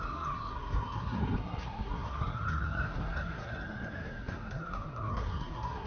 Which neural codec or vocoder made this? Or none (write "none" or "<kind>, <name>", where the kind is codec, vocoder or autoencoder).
codec, SNAC